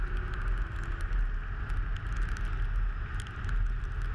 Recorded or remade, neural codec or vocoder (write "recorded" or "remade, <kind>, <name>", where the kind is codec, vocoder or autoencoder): recorded